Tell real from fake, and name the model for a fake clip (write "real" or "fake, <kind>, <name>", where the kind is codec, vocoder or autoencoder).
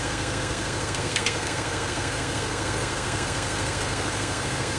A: fake, codec, SNAC